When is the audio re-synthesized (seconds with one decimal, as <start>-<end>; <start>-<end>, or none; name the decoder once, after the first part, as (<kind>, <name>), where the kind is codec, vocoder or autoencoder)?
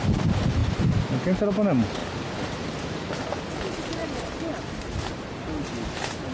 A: 0.6-1.1 (vocoder, BigVGAN v2); 2.0-3.2; 4.0-5.1